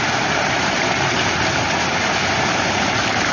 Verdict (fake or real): real